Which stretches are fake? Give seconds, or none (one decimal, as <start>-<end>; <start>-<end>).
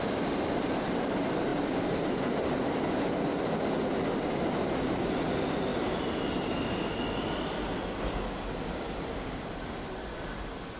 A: none